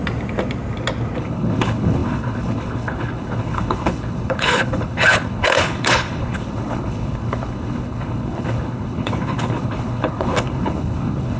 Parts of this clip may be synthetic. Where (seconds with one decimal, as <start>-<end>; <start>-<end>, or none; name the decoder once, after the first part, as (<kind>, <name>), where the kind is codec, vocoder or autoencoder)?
1.2-11.4 (codec, HILCodec)